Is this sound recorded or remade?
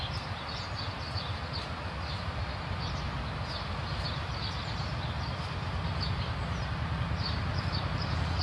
recorded